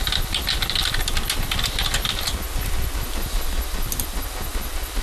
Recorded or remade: recorded